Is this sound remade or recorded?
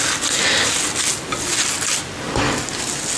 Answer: recorded